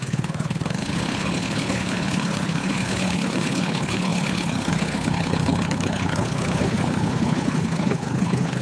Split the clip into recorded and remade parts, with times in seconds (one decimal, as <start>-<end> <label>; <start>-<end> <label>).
0.0-8.6 remade